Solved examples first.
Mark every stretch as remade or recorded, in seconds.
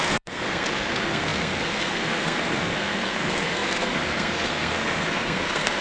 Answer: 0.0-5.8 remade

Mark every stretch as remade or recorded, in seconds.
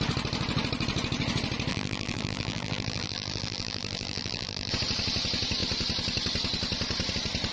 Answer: 0.0-1.7 recorded; 1.7-4.7 remade; 4.7-7.5 recorded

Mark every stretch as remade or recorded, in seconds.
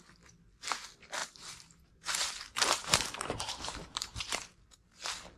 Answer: 0.0-1.2 recorded; 1.2-4.4 remade; 4.4-5.4 recorded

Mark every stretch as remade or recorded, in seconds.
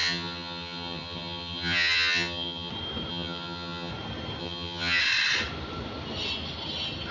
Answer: 0.0-2.7 remade; 2.7-3.1 recorded; 3.1-3.9 remade; 3.9-4.4 recorded; 4.4-5.0 remade; 5.0-7.1 recorded